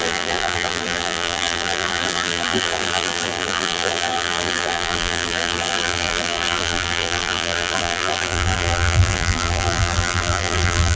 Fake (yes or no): yes